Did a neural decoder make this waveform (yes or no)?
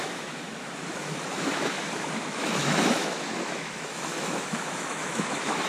yes